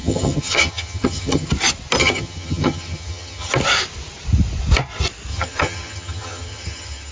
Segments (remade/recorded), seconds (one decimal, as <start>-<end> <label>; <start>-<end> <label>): 0.0-1.5 remade; 1.5-2.0 recorded; 2.0-3.5 remade; 3.5-5.3 recorded; 5.3-7.1 remade